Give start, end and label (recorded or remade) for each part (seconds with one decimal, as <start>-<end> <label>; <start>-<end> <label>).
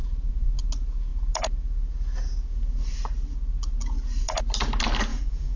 0.0-5.1 recorded; 5.1-5.6 remade